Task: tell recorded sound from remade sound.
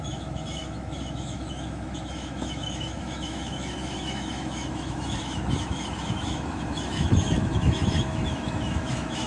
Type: remade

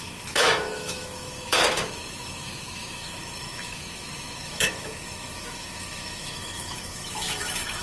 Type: remade